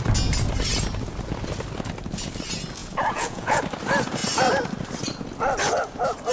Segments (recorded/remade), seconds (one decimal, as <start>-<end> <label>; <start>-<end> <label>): 0.0-2.8 recorded; 2.8-3.6 remade; 3.6-6.3 recorded